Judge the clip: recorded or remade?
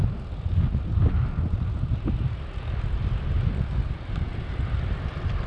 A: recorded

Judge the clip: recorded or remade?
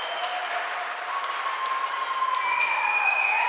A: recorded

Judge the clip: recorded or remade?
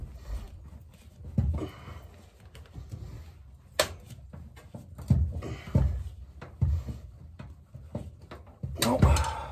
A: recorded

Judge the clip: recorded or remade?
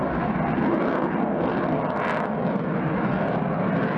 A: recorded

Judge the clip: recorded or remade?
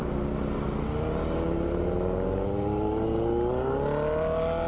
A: recorded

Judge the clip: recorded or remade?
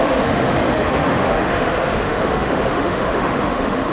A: remade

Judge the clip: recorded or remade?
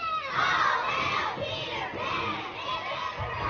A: recorded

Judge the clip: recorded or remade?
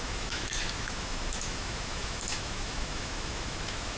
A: remade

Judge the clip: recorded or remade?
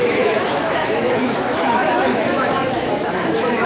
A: remade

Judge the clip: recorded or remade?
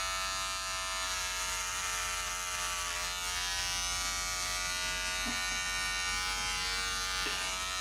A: recorded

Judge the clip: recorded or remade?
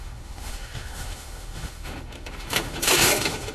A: remade